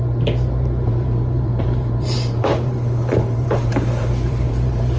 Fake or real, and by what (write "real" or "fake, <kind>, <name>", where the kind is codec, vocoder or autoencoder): fake, vocoder, BigVGAN v2